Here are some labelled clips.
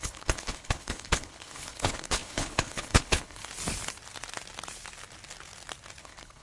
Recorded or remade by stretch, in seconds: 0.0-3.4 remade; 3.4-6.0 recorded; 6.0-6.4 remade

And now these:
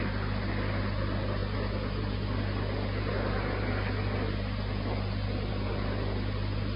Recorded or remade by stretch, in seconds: 0.0-6.8 recorded